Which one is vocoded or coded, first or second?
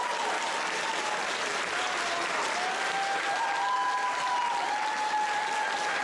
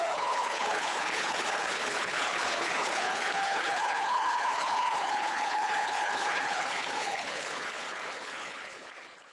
second